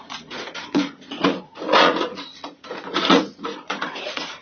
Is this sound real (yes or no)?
no